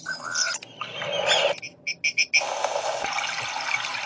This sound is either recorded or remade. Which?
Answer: recorded